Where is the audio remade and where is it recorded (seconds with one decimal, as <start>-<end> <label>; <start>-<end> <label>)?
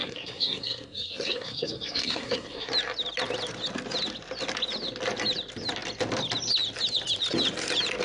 0.0-2.7 remade; 2.7-8.0 recorded